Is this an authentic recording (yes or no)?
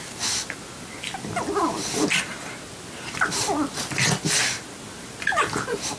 yes